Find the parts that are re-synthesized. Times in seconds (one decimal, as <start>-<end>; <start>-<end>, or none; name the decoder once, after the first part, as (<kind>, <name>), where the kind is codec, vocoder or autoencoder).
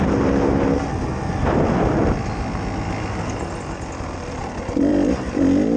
none